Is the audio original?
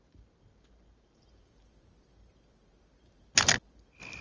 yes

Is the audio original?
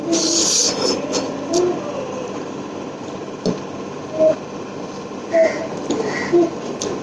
yes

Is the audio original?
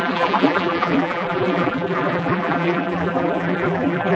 no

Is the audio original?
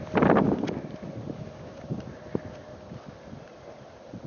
yes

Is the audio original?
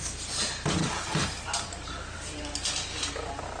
yes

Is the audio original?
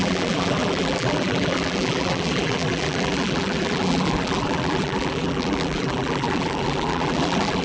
no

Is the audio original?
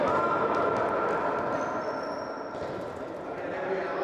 yes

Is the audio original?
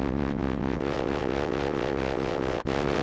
no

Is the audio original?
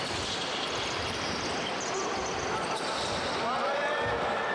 yes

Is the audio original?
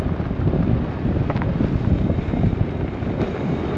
yes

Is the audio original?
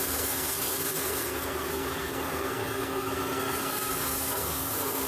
no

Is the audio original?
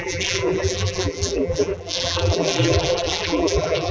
no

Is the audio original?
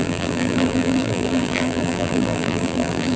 no